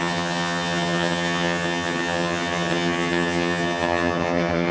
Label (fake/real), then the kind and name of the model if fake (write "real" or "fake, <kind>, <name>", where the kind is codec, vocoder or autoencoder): fake, vocoder, HiFi-GAN